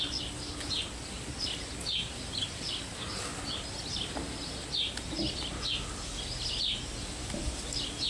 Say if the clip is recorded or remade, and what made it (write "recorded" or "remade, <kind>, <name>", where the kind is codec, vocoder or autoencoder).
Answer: recorded